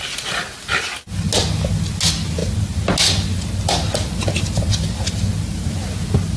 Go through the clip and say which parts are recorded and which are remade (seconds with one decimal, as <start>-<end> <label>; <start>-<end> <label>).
0.0-6.4 recorded